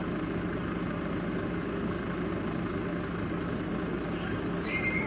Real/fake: real